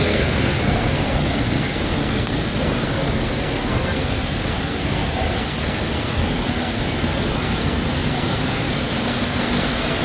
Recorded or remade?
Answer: remade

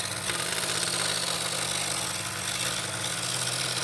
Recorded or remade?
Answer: recorded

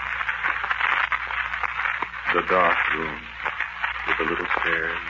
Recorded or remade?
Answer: recorded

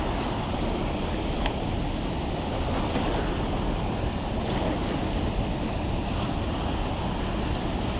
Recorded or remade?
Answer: recorded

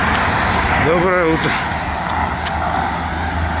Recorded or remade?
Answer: recorded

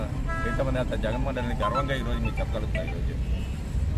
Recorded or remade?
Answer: recorded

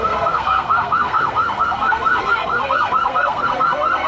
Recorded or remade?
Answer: remade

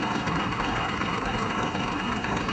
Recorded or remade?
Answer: remade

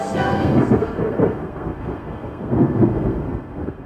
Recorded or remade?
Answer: remade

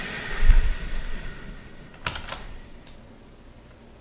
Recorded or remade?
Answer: recorded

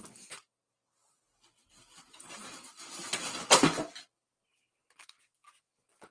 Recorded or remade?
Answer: recorded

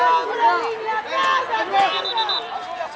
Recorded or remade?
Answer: recorded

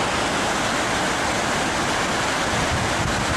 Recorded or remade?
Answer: recorded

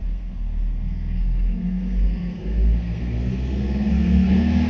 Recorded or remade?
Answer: remade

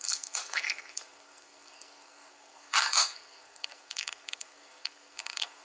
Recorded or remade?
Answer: remade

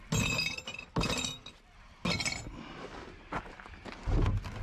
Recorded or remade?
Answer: recorded